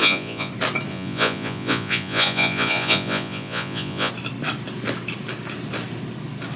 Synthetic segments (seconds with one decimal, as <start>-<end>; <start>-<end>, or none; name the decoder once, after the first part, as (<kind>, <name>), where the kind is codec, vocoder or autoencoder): 0.0-0.5 (vocoder, Vocos); 0.9-4.1